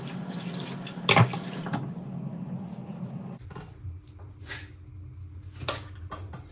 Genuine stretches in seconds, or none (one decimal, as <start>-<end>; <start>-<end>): 0.0-6.5